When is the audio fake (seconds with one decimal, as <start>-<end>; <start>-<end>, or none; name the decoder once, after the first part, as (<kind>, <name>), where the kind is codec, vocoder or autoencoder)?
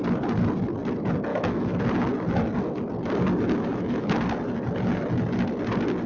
1.3-1.8 (autoencoder, DAC-VAE); 3.7-4.2